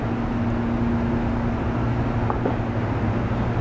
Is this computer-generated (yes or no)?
no